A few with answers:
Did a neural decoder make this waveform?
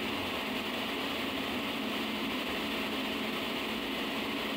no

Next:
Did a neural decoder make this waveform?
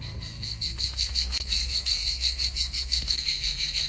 yes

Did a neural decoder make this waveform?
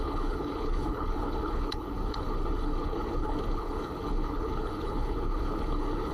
yes